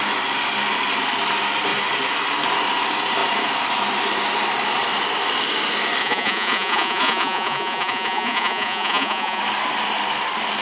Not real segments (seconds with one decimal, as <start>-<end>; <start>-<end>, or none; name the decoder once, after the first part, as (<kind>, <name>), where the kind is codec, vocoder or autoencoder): 6.0-9.4 (vocoder, Vocos)